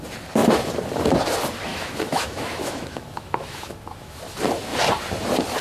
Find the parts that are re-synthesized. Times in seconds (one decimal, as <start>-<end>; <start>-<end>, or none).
1.7-4.2